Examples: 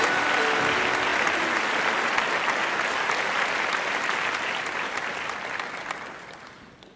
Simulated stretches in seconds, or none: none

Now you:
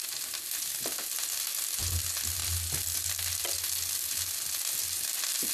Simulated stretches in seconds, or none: none

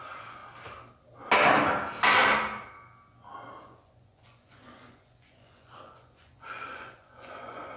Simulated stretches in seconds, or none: 0.0-0.4 (vocoder, Vocos); 3.6-7.8

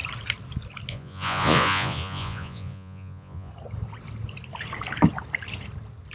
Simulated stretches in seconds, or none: 0.9-3.5 (vocoder, Vocos)